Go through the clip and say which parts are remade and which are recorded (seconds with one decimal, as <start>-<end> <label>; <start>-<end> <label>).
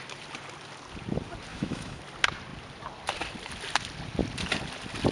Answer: 0.0-1.5 recorded; 1.5-2.0 remade; 2.0-5.1 recorded